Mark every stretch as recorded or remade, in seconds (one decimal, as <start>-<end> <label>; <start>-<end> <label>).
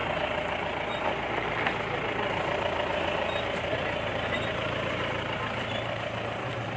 0.0-4.1 recorded; 4.1-6.8 remade